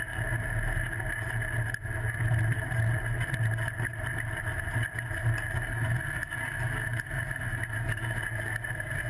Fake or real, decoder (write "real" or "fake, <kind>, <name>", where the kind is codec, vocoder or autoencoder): real